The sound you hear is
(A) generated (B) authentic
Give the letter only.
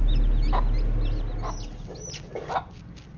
B